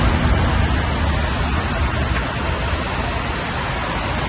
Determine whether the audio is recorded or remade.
recorded